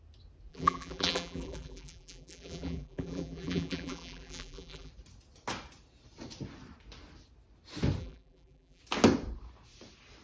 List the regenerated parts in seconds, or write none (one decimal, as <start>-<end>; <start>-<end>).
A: 0.5-4.9; 8.0-8.8